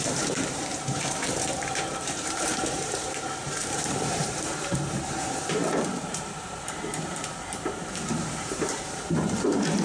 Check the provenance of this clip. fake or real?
fake